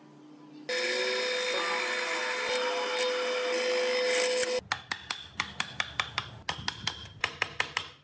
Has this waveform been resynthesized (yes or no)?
no